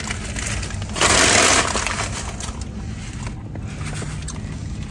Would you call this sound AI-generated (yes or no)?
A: no